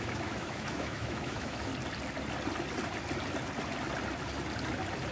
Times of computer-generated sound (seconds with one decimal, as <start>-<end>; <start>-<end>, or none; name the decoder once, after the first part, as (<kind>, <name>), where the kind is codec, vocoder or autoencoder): 0.0-1.7 (autoencoder, DAC-VAE)